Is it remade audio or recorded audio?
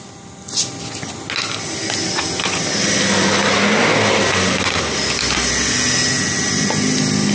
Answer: recorded